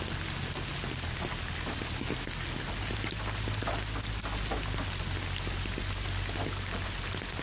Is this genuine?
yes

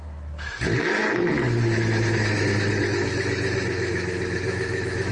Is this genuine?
no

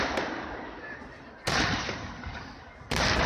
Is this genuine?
yes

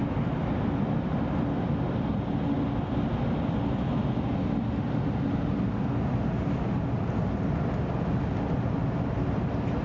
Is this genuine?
yes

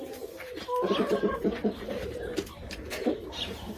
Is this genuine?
no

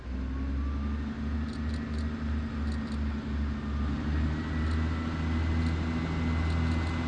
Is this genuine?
yes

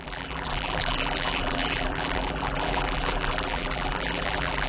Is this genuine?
no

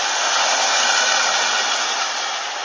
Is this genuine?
yes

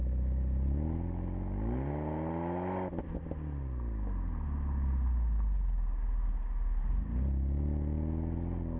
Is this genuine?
yes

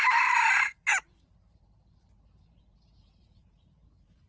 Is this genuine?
no